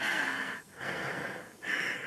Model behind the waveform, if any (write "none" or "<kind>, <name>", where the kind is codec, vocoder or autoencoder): codec, SNAC